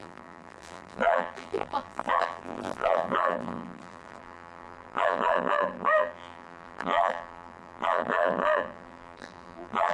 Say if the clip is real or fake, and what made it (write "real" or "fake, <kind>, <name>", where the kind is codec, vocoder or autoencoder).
fake, vocoder, BigVGAN v2